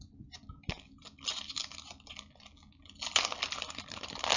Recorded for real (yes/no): yes